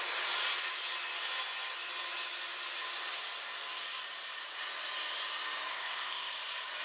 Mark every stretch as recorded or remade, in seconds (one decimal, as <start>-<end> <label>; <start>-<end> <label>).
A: 0.0-5.7 recorded; 5.7-6.3 remade; 6.3-6.8 recorded